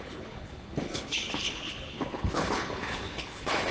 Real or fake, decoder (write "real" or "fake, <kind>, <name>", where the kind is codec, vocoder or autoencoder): fake, codec, HILCodec